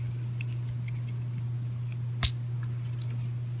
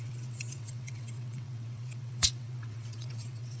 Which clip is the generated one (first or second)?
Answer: second